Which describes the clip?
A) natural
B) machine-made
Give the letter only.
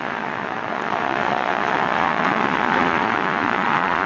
B